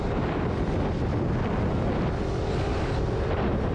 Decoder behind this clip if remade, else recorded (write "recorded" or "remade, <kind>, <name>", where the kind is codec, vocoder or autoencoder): recorded